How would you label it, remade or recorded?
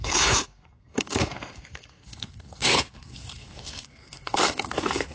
remade